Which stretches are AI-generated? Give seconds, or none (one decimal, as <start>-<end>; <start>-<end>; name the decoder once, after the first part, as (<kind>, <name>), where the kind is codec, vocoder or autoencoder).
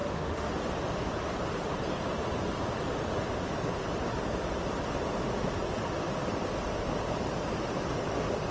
0.0-0.5 (autoencoder, DAC-VAE)